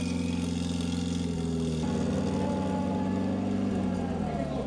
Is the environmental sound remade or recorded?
recorded